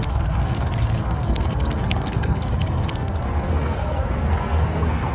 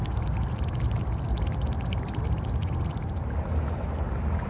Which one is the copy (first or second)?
first